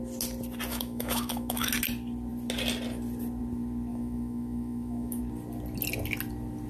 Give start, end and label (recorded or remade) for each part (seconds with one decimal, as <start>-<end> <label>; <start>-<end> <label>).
0.0-0.7 recorded; 0.7-1.7 remade; 1.7-3.9 recorded; 3.9-5.2 remade; 5.2-6.7 recorded